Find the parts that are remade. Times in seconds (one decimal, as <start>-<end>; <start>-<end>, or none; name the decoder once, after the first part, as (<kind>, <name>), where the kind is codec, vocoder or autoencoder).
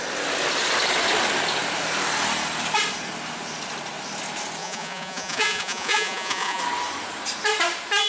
4.6-6.6 (vocoder, Vocos)